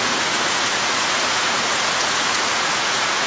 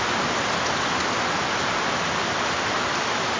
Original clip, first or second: second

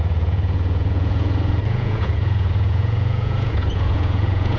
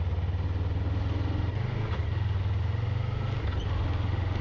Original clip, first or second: second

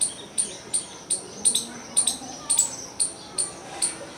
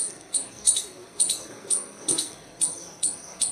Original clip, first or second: first